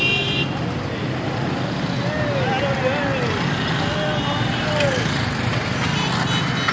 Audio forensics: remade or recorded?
recorded